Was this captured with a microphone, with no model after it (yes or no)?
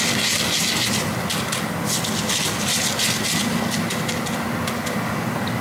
yes